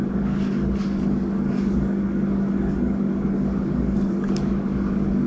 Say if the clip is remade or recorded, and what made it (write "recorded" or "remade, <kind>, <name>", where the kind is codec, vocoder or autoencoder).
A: remade, codec, DAC